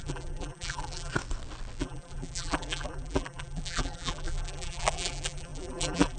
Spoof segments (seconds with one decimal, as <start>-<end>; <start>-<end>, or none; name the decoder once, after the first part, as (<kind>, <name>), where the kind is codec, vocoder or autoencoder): 0.0-1.1 (vocoder, BigVGAN v2); 1.8-6.2